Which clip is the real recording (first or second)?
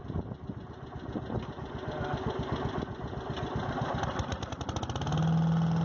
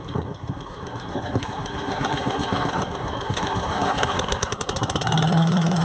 first